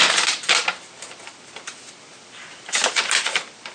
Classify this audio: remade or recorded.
recorded